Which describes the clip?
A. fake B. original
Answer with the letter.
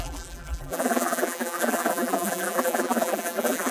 A